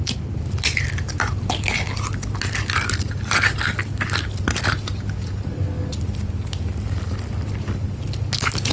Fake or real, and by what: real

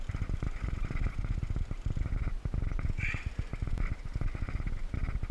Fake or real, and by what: fake, vocoder, BigVGAN v2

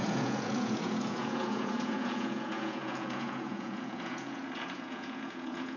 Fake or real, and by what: fake, vocoder, Vocos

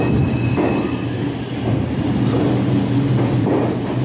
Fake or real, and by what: real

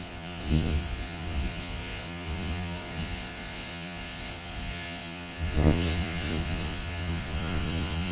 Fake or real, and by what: fake, vocoder, Vocos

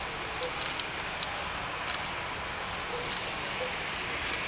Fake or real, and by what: real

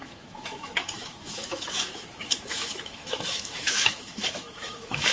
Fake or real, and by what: fake, autoencoder, DAC-VAE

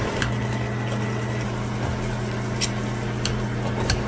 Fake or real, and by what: real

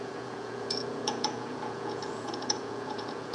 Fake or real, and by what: fake, vocoder, Vocos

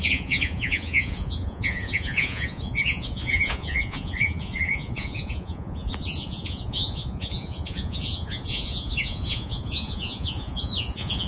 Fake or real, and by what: fake, vocoder, Vocos